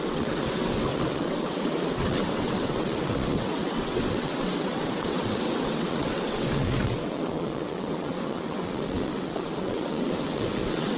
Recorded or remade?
remade